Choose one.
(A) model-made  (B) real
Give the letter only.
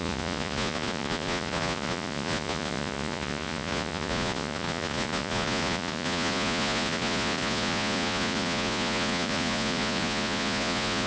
A